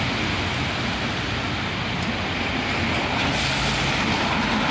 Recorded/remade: recorded